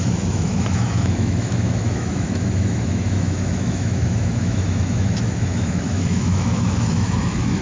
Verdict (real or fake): fake